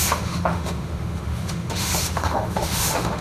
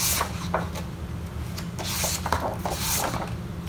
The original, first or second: second